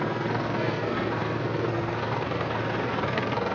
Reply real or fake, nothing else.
fake